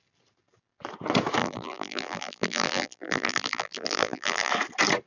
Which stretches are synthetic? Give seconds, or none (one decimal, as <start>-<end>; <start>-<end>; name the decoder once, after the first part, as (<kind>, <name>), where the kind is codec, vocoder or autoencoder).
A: 1.4-4.5 (vocoder, BigVGAN v2)

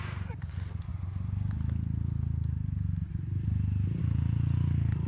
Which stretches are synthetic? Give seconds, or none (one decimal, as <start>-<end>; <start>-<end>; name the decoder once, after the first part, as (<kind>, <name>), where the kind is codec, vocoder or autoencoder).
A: none

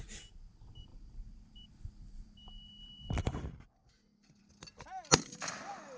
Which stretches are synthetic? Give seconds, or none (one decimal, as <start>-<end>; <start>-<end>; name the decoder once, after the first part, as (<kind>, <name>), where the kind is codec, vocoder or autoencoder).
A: 0.9-4.5 (vocoder, BigVGAN v2)

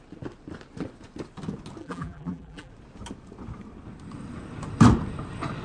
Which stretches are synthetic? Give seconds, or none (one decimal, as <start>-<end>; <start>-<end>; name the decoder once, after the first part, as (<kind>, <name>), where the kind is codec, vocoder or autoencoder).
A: 1.8-2.7 (vocoder, BigVGAN v2)

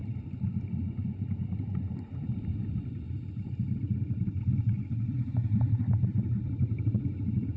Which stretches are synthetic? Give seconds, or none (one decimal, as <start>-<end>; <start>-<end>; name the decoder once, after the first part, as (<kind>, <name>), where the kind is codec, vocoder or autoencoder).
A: none

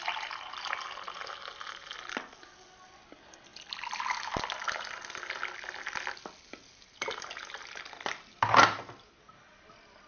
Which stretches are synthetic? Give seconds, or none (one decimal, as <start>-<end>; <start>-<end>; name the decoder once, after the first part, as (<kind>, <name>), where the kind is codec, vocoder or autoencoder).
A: 3.5-4.6 (vocoder, BigVGAN v2)

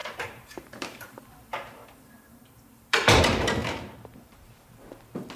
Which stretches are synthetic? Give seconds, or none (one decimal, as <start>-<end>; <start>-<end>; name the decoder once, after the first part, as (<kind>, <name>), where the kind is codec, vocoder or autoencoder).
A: 0.0-3.2 (vocoder, BigVGAN v2); 3.6-4.7